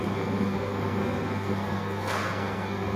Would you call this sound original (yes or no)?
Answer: no